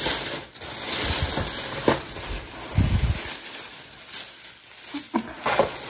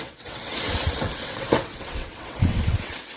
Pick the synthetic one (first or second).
second